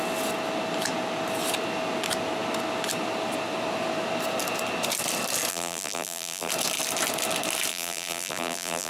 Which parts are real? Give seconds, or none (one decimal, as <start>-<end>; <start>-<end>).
0.0-5.5; 6.5-7.7